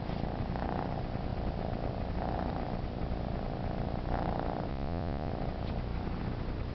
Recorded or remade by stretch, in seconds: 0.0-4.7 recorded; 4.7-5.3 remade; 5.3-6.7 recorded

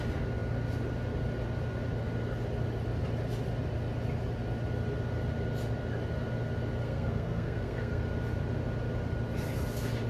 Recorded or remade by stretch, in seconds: 0.0-6.8 recorded; 6.8-8.0 remade; 8.0-10.1 recorded

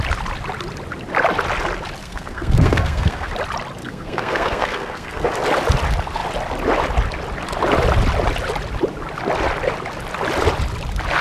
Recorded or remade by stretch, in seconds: 0.0-2.0 recorded; 2.0-3.3 remade; 3.3-3.8 recorded; 3.8-5.3 remade; 5.3-11.2 recorded